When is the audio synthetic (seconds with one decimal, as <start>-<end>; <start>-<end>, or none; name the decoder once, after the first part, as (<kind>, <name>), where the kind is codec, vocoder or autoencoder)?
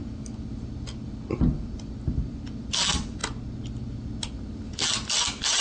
none